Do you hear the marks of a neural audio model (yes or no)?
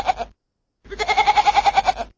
no